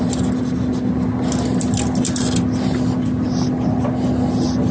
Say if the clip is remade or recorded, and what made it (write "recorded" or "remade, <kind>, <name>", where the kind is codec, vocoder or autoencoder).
recorded